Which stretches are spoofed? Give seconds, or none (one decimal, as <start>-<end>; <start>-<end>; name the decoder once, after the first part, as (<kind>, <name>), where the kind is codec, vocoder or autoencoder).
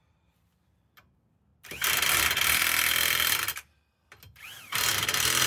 0.0-5.5 (vocoder, BigVGAN v2)